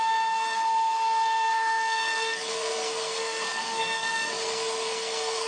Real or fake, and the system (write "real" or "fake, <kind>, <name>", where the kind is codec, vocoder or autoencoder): fake, codec, SNAC